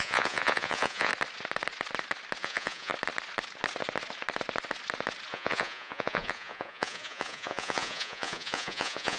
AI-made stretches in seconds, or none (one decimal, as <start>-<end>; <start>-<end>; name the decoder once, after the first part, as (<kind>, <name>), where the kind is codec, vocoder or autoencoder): 0.0-1.1 (vocoder, Vocos); 2.4-2.9; 5.3-9.2

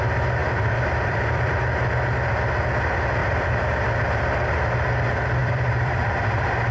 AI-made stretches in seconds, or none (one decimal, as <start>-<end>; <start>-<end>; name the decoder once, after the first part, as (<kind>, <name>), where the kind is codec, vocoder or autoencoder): 0.4-1.6 (vocoder, BigVGAN v2); 3.2-4.0; 5.4-6.1

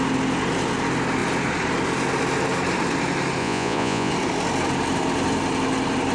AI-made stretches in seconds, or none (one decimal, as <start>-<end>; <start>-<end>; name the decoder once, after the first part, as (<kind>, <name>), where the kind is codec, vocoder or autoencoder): 3.4-4.1 (vocoder, Vocos)

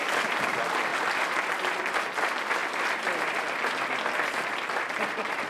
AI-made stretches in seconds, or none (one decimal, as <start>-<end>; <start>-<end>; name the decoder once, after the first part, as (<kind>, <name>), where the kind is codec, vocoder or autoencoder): none

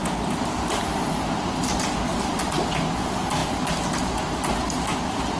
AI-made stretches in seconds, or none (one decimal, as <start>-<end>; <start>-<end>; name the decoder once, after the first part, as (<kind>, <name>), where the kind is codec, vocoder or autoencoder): 0.8-3.4 (vocoder, BigVGAN v2); 4.0-5.4